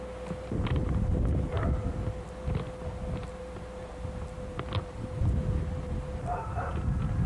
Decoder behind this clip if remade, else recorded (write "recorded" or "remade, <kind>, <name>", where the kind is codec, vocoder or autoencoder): recorded